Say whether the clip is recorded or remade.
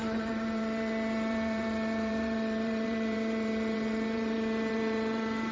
remade